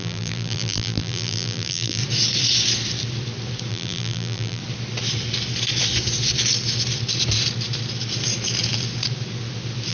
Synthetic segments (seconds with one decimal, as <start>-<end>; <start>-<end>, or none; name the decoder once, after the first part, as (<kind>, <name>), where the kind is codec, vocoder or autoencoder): 0.0-2.0 (vocoder, BigVGAN v2); 3.7-4.6

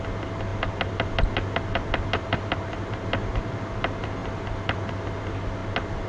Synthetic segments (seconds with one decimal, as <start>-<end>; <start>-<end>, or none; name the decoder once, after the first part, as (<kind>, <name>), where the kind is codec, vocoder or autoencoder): none